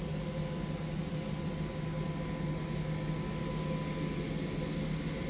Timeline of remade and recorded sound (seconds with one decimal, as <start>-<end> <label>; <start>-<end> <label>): 0.0-5.3 recorded